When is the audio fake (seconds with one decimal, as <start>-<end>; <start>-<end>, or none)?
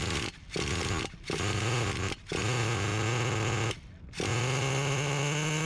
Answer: none